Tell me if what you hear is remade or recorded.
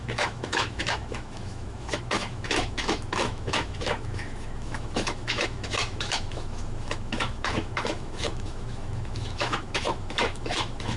remade